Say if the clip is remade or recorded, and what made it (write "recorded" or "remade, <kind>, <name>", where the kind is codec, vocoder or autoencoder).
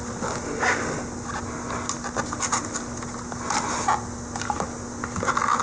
recorded